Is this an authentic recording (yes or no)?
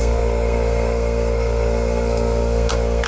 no